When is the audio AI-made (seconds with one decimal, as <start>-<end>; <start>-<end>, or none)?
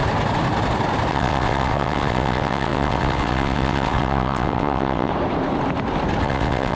1.1-5.1; 6.2-6.8